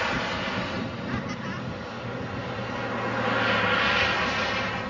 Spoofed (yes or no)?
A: no